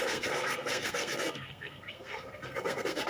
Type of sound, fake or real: fake